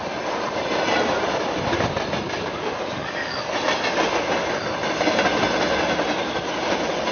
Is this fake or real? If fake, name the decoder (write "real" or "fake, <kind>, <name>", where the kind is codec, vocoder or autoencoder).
real